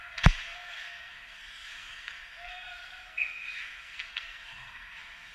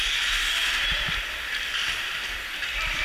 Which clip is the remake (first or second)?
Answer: first